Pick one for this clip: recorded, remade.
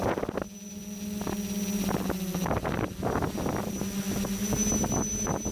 recorded